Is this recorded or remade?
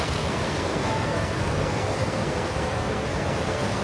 remade